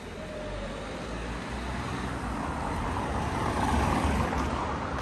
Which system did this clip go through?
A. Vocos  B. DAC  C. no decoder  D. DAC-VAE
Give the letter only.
C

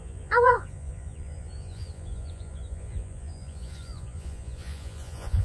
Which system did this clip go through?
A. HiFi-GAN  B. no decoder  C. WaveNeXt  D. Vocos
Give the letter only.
D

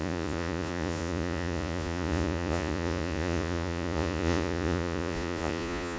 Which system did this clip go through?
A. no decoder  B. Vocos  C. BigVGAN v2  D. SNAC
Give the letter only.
B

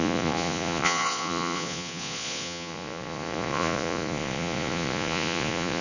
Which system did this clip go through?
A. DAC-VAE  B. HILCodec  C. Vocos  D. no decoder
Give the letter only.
C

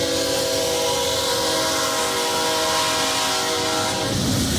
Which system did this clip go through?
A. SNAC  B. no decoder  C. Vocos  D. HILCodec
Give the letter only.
B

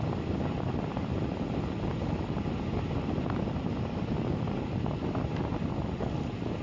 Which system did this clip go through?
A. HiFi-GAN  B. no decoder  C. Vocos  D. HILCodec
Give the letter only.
B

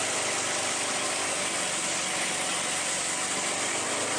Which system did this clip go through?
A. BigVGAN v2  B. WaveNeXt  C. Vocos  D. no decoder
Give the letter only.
D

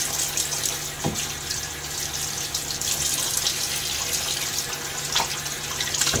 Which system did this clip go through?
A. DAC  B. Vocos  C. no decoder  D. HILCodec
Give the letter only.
C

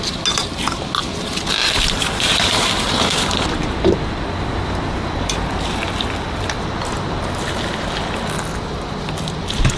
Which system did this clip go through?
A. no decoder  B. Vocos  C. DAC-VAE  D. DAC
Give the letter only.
A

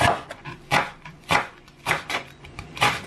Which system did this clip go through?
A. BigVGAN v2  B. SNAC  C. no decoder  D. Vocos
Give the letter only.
D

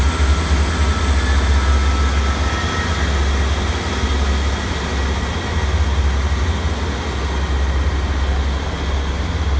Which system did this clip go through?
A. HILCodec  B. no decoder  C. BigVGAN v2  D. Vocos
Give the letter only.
B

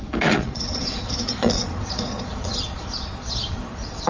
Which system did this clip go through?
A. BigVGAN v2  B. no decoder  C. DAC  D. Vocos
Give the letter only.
D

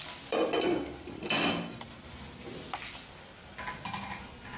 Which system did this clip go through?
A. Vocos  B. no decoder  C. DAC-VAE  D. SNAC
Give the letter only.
B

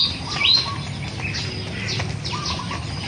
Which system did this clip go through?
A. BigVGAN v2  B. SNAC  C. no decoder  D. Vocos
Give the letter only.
C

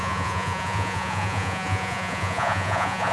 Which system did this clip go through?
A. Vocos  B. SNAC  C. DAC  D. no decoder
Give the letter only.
A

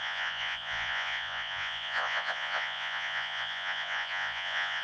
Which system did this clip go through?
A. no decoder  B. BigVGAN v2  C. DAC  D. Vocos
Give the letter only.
D